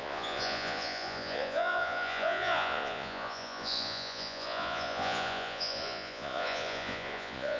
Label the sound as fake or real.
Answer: fake